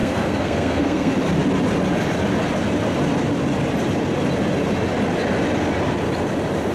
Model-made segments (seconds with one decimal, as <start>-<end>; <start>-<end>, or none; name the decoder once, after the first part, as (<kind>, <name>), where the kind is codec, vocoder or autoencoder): 0.0-1.1 (codec, SNAC)

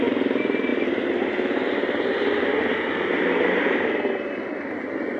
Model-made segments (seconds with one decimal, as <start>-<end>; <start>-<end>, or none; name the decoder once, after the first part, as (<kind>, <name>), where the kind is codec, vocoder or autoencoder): none

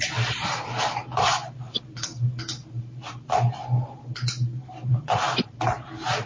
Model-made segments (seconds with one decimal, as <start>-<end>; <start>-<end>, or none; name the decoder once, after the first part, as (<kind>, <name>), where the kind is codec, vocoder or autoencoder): 0.0-6.3 (vocoder, BigVGAN v2)

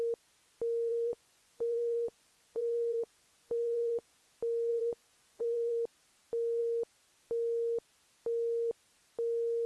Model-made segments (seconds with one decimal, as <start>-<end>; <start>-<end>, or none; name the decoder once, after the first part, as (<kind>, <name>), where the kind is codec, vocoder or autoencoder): 0.9-4.3 (vocoder, Vocos); 4.7-5.7

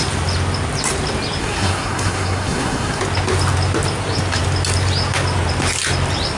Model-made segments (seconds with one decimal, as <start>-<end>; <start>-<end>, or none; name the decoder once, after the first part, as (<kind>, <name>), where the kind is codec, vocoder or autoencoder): 1.4-3.0 (codec, SNAC)

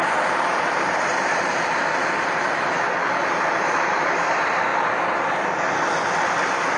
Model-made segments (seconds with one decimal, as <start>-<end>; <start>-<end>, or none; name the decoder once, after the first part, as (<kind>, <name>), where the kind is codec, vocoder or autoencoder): 0.0-1.5 (vocoder, BigVGAN v2); 3.5-4.7